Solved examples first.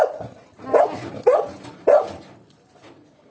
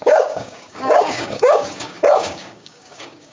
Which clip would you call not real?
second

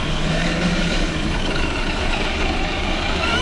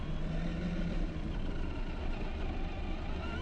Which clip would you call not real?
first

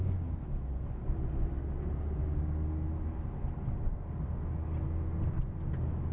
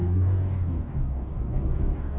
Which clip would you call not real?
second